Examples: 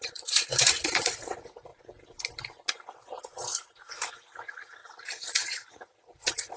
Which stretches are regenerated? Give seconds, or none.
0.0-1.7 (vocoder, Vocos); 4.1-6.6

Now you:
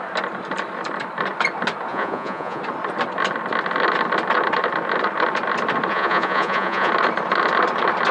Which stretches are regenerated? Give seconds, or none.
1.9-2.6 (vocoder, Vocos); 5.9-6.9

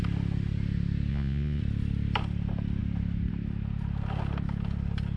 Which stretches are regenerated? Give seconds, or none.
1.1-1.6 (vocoder, Vocos)